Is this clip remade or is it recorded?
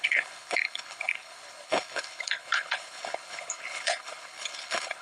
remade